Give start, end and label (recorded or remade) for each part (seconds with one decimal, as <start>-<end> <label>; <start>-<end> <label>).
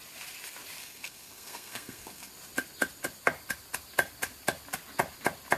0.0-0.8 recorded; 0.8-2.3 remade; 2.3-5.6 recorded